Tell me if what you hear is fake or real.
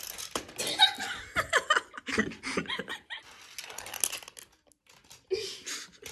real